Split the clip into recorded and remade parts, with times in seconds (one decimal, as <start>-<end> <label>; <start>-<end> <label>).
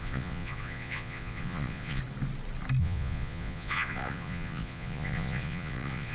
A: 0.0-2.0 remade; 2.0-2.8 recorded; 2.8-6.1 remade